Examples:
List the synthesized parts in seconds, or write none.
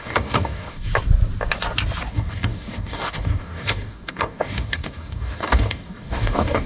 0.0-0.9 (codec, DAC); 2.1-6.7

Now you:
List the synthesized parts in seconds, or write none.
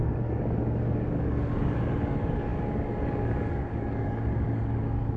0.0-5.2 (codec, DAC)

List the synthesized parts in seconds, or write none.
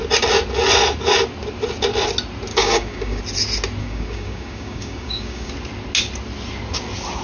2.5-3.2 (codec, DAC); 3.8-5.5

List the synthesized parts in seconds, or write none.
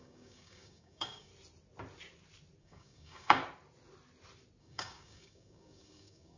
0.0-1.3 (codec, DAC); 2.6-3.4; 4.6-6.4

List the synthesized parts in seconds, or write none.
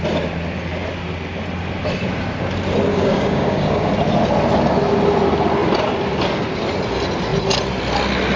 2.9-3.9 (codec, DAC)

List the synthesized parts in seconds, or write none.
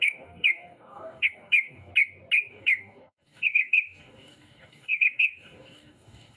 0.0-1.9 (codec, DAC); 2.5-6.4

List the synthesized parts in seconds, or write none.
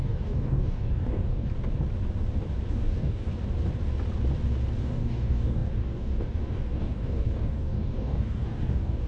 0.0-1.5 (codec, DAC); 2.7-3.3; 4.8-9.1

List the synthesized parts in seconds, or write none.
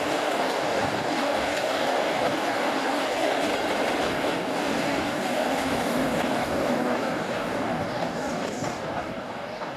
0.0-3.5 (codec, DAC); 4.0-9.8